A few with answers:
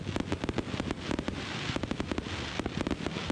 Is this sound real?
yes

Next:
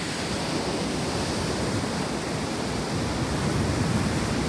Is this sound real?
yes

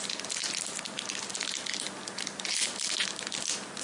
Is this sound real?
yes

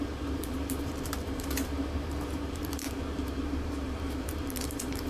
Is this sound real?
no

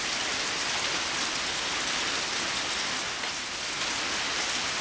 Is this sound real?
yes